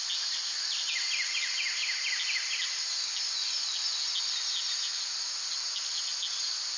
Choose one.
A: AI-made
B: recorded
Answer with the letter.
B